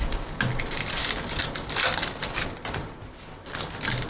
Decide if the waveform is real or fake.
real